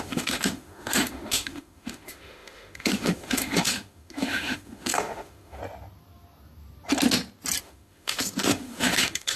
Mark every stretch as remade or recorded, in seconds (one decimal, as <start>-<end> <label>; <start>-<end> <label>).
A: 0.0-5.6 remade; 5.6-7.6 recorded; 7.6-9.4 remade